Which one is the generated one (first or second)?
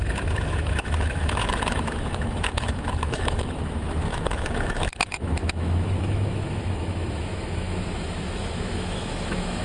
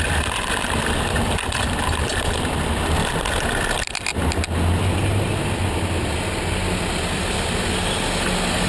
first